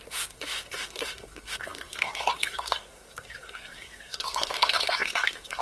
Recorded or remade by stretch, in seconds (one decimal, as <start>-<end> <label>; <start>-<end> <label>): 0.0-5.6 remade